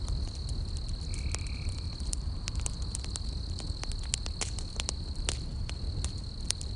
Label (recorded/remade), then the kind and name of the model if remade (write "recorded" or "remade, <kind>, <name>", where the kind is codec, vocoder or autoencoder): recorded